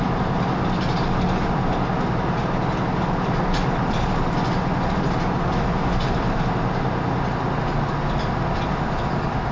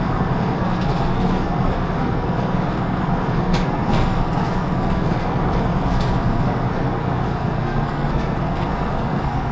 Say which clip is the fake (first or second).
second